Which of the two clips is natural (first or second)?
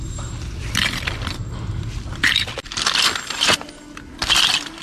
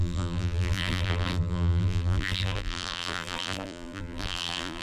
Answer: first